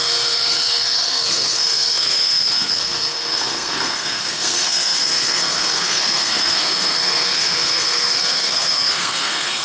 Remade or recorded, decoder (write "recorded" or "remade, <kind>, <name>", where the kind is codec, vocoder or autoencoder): remade, codec, SNAC